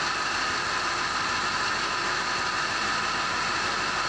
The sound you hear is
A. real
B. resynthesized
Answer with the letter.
A